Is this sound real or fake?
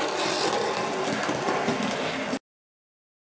real